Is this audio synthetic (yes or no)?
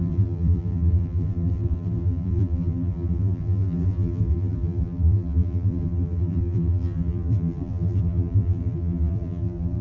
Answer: yes